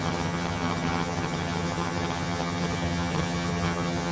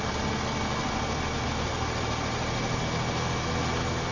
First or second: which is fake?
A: first